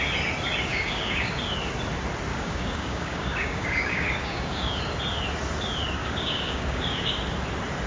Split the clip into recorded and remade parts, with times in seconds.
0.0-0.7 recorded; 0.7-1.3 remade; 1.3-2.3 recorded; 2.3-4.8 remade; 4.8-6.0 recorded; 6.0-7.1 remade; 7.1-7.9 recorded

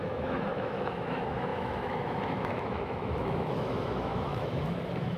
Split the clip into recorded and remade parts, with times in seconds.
0.0-5.2 remade

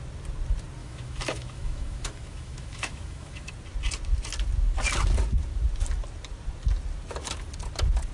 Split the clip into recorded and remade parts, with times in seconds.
0.0-0.8 recorded; 0.8-3.5 remade; 3.5-8.1 recorded

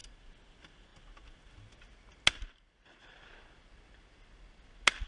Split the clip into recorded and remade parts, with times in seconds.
0.0-5.1 recorded

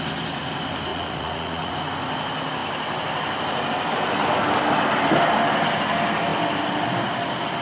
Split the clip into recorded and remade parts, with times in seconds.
0.0-0.9 recorded; 0.9-1.7 remade; 1.7-7.6 recorded

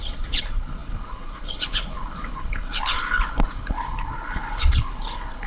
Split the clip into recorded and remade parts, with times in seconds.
0.0-5.5 remade

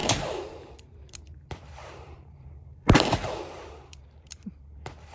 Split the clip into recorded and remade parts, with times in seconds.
0.0-5.1 remade